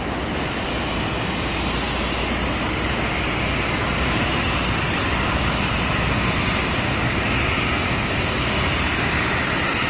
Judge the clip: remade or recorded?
recorded